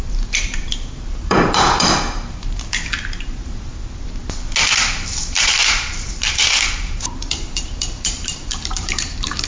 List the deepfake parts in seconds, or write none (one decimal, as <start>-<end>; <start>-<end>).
0.0-3.7; 4.9-9.5